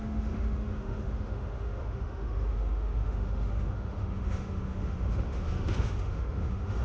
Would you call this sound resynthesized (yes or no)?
yes